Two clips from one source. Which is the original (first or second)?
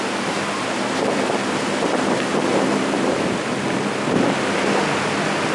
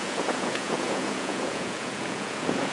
first